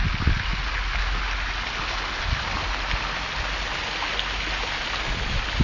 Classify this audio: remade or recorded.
recorded